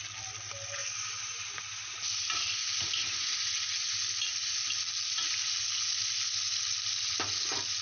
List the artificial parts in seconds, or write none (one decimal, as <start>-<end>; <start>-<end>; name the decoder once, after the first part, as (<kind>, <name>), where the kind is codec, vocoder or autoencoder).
none

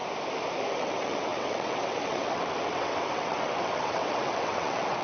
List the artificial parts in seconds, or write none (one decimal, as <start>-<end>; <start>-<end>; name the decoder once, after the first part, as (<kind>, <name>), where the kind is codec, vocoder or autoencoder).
0.7-5.0 (vocoder, WaveNeXt)

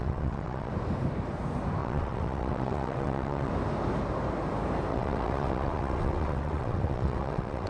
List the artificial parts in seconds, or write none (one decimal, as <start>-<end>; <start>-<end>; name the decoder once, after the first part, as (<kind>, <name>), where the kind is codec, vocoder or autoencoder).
0.0-0.7 (vocoder, WaveNeXt); 1.8-3.5; 4.9-7.7

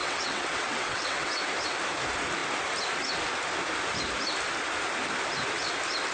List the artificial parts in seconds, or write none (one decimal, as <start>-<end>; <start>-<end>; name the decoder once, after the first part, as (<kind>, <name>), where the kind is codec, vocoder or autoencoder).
0.0-1.4 (vocoder, WaveNeXt)

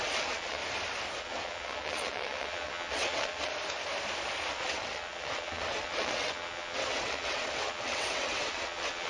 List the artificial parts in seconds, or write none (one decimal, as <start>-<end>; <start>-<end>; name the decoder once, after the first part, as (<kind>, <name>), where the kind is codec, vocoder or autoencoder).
0.0-0.6 (vocoder, WaveNeXt); 1.2-3.5; 4.5-9.1

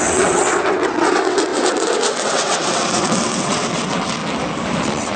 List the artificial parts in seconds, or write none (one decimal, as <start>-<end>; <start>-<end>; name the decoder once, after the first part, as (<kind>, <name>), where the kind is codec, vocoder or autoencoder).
0.0-4.2 (vocoder, WaveNeXt); 4.8-5.2

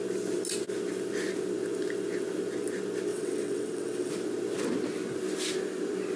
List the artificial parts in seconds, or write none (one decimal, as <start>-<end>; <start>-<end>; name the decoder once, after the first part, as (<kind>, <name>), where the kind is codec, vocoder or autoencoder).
3.1-4.1 (vocoder, WaveNeXt)